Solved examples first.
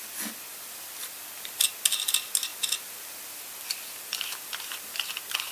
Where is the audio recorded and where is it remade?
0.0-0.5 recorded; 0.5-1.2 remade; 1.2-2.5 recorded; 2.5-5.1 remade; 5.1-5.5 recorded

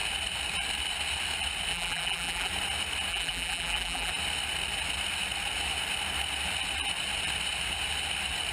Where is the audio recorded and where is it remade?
0.0-1.7 recorded; 1.7-2.5 remade; 2.5-3.1 recorded; 3.1-4.1 remade; 4.1-8.5 recorded

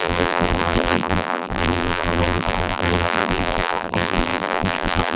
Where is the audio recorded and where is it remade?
0.0-5.2 remade